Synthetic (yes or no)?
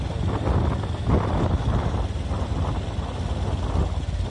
no